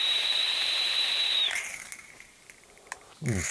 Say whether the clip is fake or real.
fake